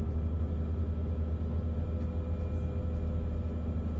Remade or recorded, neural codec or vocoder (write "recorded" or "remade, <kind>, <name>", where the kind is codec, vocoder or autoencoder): recorded